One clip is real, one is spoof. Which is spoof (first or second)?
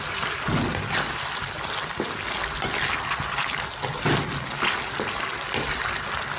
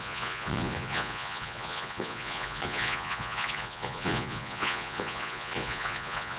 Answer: second